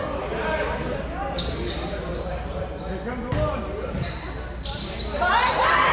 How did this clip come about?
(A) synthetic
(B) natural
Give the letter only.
B